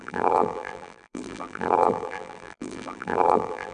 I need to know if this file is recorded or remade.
remade